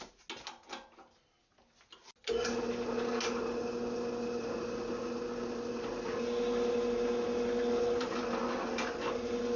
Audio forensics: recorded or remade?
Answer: recorded